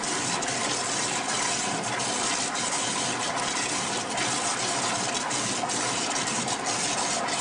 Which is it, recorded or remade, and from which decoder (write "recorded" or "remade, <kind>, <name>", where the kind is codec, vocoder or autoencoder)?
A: recorded